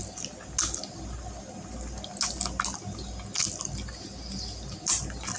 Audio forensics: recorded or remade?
recorded